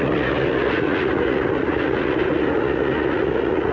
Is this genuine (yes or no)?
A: no